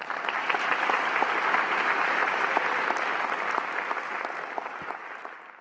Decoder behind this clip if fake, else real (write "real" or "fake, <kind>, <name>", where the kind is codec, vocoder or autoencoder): real